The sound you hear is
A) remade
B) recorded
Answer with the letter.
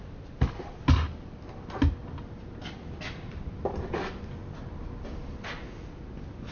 B